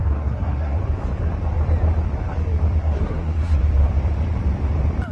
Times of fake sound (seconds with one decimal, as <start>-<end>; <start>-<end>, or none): 0.0-0.8; 2.8-3.6